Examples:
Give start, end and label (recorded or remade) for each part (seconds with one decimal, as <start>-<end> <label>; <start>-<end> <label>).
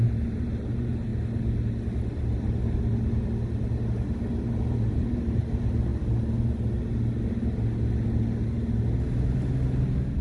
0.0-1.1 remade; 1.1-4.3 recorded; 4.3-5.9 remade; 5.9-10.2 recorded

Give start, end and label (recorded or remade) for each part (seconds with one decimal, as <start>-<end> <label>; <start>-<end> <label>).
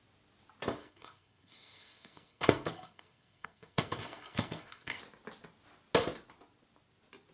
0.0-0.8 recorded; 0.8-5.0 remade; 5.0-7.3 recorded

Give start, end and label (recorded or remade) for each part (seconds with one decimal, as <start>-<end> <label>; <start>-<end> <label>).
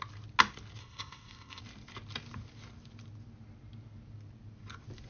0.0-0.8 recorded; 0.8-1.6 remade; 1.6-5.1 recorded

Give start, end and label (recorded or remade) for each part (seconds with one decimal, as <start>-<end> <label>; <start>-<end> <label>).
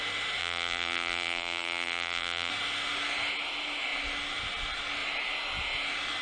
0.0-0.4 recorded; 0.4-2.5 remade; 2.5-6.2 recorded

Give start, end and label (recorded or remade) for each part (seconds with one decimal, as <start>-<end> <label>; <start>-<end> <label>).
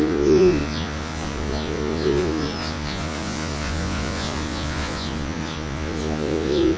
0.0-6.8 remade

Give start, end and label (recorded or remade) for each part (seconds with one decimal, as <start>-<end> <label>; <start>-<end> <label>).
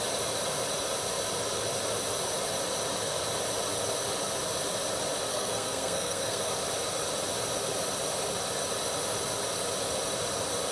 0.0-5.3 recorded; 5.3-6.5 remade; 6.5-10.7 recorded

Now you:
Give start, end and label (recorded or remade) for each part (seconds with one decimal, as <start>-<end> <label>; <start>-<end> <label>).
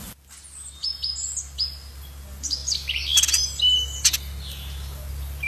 0.0-5.5 recorded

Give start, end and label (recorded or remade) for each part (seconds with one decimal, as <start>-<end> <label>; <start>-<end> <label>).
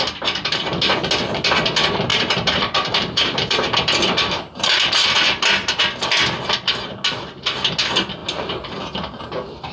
0.0-2.1 recorded; 2.1-4.9 remade; 4.9-9.7 recorded